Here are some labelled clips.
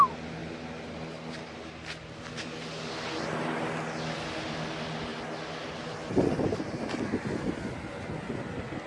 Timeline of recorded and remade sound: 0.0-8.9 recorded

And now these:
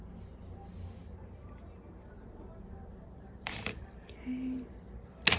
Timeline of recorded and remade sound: 0.0-1.0 recorded; 1.0-4.2 remade; 4.2-5.4 recorded